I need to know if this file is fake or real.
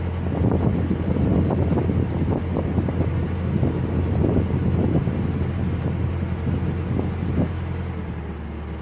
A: real